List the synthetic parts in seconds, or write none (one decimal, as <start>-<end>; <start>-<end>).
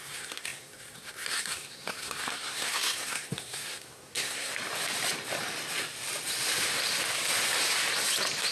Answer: 0.0-4.5